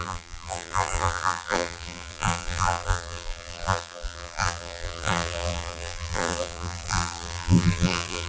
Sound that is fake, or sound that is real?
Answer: fake